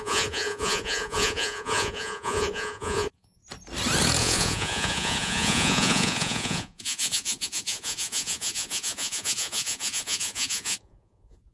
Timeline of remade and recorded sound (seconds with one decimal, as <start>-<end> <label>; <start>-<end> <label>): 0.0-3.4 remade; 3.4-4.2 recorded; 4.2-11.5 remade